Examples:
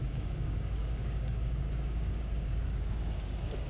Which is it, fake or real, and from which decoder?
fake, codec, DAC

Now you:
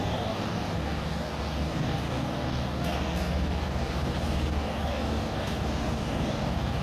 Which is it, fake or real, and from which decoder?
fake, codec, DAC